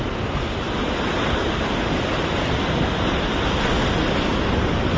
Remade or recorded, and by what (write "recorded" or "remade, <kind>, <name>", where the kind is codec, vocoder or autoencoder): recorded